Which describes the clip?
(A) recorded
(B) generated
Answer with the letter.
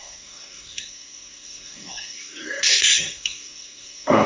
B